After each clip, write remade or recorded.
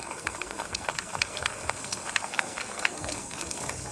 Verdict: remade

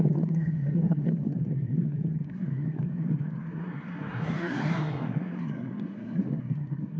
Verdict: remade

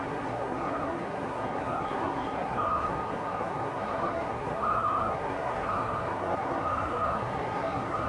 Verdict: remade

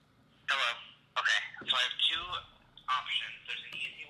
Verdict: recorded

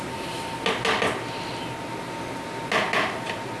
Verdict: recorded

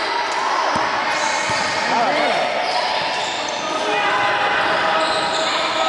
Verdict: recorded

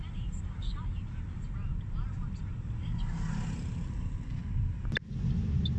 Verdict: recorded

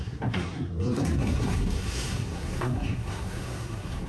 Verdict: remade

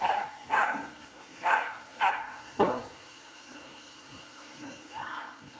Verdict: remade